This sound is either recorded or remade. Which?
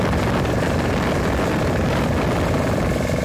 recorded